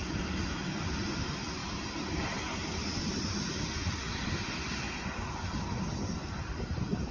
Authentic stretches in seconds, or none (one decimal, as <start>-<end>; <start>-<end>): 0.0-7.1